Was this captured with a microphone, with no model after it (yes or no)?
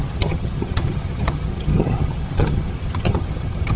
no